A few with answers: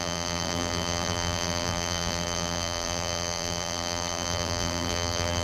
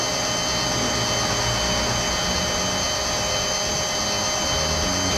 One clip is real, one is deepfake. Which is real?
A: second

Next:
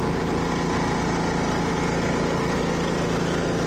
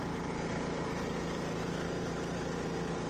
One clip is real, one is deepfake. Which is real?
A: first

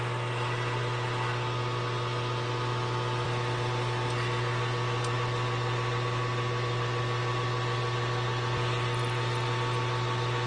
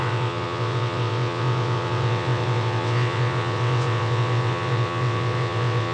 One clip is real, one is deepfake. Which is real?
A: first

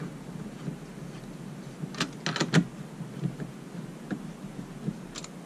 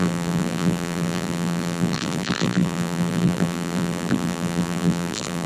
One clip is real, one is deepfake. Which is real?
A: first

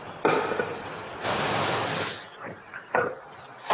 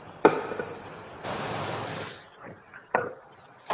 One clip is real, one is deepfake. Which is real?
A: first